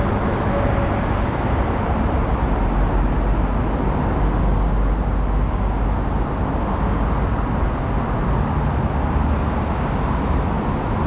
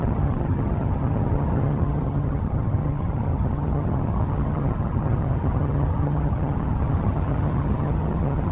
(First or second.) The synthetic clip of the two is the second